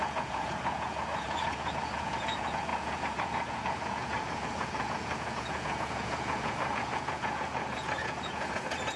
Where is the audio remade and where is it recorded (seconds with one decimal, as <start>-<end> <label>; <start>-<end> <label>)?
0.0-9.0 remade